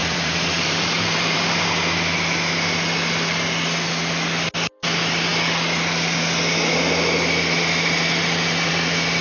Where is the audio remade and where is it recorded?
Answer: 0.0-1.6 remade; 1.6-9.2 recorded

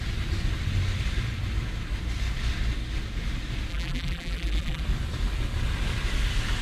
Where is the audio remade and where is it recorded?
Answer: 0.0-3.7 recorded; 3.7-4.8 remade; 4.8-6.6 recorded

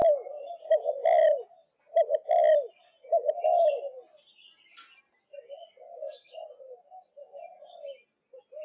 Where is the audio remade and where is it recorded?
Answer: 0.0-8.6 recorded

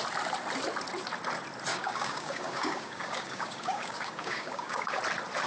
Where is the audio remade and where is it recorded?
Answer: 0.0-1.7 recorded; 1.7-5.0 remade; 5.0-5.5 recorded

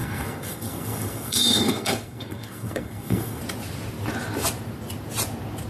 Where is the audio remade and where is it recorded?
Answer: 0.0-3.4 remade; 3.4-5.7 recorded

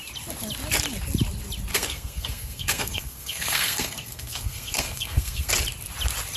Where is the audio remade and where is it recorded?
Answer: 0.0-1.7 recorded; 1.7-5.5 remade; 5.5-6.4 recorded

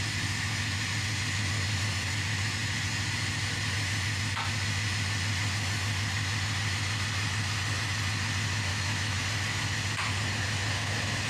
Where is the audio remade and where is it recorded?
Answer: 0.0-8.7 recorded; 8.7-9.2 remade; 9.2-11.3 recorded